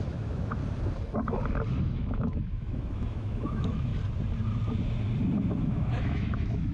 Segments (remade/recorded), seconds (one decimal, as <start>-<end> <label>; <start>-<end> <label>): 0.0-0.6 remade; 0.6-1.8 recorded; 1.8-3.9 remade; 3.9-5.6 recorded; 5.6-6.7 remade